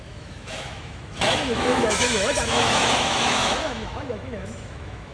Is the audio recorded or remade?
remade